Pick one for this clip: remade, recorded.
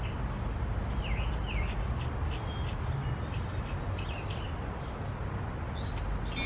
recorded